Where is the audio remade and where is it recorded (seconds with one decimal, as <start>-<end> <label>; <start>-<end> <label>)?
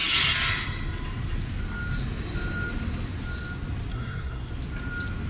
0.0-3.9 recorded; 3.9-4.5 remade; 4.5-5.3 recorded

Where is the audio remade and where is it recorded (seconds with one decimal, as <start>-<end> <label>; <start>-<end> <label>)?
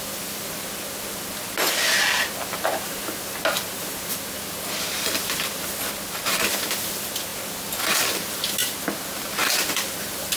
0.0-10.4 recorded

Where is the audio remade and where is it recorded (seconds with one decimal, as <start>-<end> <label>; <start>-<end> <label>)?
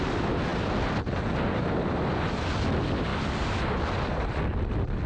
0.0-5.1 recorded